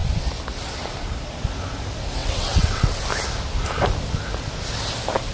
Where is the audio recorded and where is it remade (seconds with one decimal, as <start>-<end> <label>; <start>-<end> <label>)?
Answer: 0.0-2.2 recorded; 2.2-3.0 remade; 3.0-5.3 recorded